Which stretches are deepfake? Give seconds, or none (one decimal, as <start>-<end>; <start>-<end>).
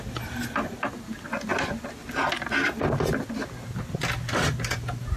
none